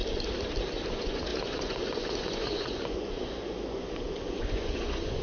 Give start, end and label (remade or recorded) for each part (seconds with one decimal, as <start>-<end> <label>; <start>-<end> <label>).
0.0-0.9 recorded; 0.9-5.2 remade